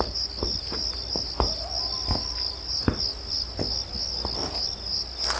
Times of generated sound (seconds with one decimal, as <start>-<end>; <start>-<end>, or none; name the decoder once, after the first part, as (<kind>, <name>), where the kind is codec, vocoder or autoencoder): none